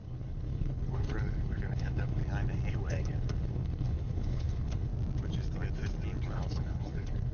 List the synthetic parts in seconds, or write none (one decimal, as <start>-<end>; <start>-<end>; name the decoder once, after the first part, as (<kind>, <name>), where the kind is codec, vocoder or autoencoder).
0.0-2.2 (codec, HILCodec); 2.7-4.9; 6.3-7.3